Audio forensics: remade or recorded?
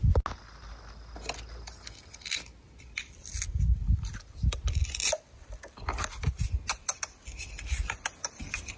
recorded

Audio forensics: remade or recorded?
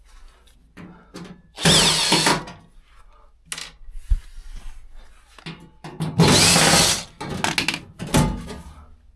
recorded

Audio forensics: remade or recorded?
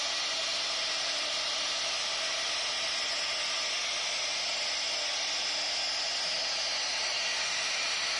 recorded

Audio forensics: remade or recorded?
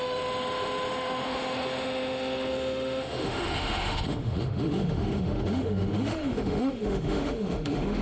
remade